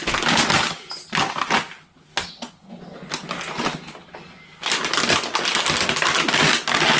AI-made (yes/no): no